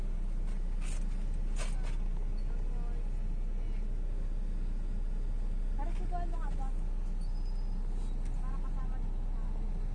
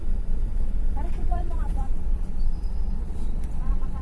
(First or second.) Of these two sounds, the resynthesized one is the second